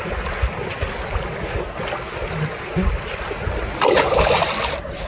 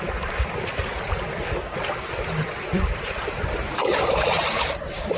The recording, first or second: first